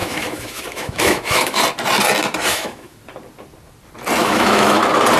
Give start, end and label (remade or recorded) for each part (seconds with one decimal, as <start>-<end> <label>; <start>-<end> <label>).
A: 0.0-1.6 remade; 1.6-2.5 recorded; 2.5-3.0 remade; 3.0-4.2 recorded; 4.2-4.8 remade; 4.8-5.2 recorded